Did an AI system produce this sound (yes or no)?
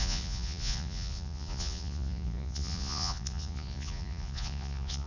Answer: yes